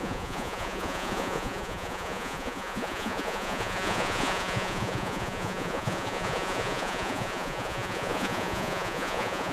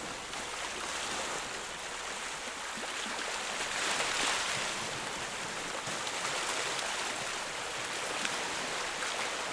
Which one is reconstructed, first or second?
first